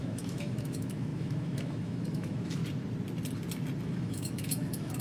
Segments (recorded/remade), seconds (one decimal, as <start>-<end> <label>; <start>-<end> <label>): 0.0-2.6 remade; 2.6-3.8 recorded; 3.8-5.0 remade